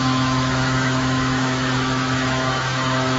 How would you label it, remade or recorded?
remade